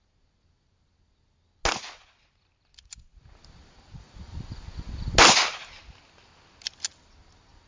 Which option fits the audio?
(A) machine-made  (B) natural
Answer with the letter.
B